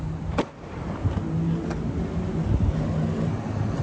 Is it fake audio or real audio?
real